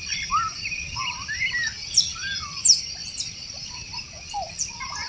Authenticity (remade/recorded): remade